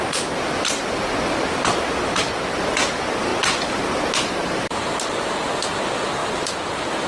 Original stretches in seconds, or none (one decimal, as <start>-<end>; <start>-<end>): 0.0-7.1